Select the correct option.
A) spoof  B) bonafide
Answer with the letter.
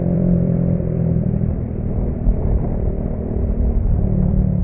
A